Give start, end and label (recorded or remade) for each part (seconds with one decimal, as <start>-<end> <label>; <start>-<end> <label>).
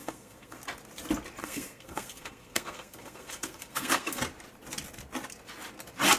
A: 0.0-0.6 remade; 0.6-1.4 recorded; 1.4-4.2 remade; 4.2-6.2 recorded